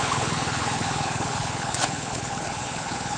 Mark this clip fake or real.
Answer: fake